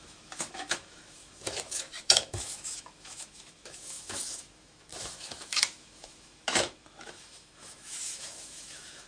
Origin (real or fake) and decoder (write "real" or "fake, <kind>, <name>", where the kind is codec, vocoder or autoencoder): fake, autoencoder, DAC-VAE